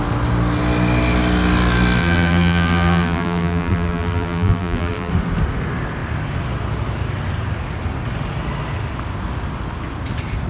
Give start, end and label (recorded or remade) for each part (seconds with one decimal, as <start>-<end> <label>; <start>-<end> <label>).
0.0-2.0 recorded; 2.0-5.1 remade; 5.1-10.5 recorded